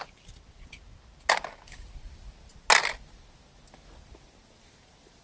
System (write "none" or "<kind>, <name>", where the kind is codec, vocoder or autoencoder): none